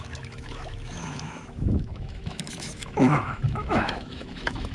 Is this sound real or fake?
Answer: fake